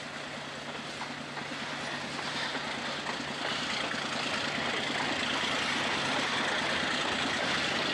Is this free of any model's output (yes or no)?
yes